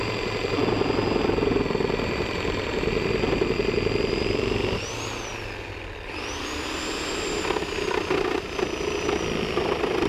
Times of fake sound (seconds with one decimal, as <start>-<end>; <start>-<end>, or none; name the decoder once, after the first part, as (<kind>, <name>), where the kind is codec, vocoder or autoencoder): 0.0-0.6 (vocoder, BigVGAN v2); 2.2-10.1

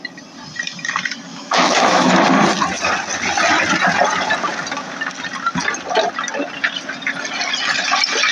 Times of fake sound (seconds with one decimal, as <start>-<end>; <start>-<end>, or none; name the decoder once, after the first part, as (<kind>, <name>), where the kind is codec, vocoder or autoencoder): 1.3-2.1 (autoencoder, DAC-VAE)

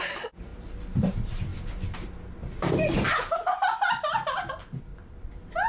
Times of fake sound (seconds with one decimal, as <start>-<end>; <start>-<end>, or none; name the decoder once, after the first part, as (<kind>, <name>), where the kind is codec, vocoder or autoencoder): 0.0-0.5 (vocoder, BigVGAN v2); 1.1-4.9

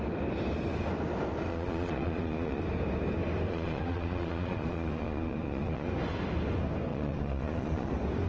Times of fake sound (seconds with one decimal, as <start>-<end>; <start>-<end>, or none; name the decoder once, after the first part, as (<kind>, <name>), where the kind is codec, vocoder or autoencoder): 1.5-2.6 (vocoder, Vocos); 3.5-5.9; 6.9-7.9

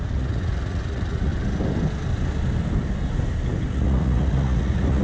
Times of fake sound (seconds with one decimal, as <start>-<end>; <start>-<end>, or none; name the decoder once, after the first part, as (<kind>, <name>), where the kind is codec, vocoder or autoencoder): 0.0-1.3 (vocoder, Vocos); 3.7-5.0

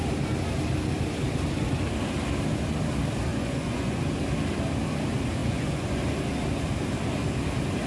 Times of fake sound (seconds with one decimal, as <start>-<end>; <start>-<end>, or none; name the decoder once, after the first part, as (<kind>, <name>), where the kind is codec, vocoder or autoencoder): 3.3-4.0 (vocoder, Vocos); 5.4-6.0

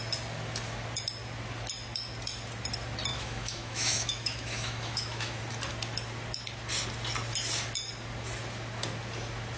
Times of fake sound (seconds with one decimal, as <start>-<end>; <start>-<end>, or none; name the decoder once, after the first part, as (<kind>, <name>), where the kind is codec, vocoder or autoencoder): 3.1-5.4 (autoencoder, DAC-VAE)